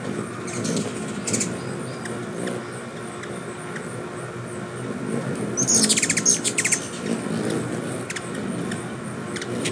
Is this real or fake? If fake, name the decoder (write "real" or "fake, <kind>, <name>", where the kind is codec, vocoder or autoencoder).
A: real